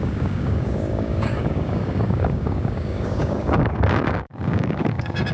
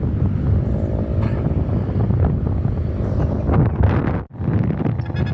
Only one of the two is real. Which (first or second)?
second